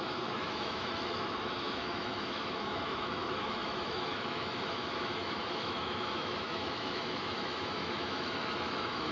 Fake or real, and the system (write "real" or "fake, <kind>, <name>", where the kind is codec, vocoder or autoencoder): fake, autoencoder, DAC-VAE